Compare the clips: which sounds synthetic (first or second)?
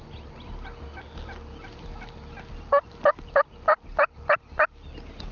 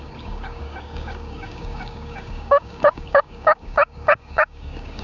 second